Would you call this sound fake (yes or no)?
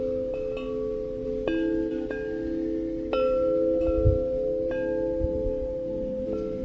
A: no